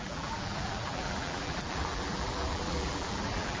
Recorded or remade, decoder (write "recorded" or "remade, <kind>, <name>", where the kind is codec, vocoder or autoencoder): remade, vocoder, BigVGAN v2